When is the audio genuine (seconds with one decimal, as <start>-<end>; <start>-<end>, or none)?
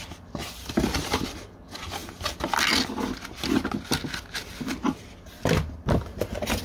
0.0-6.6